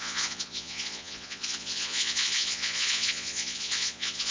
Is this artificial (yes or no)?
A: yes